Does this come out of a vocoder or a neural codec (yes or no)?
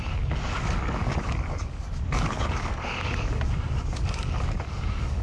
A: yes